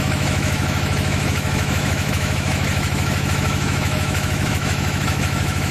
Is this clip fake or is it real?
fake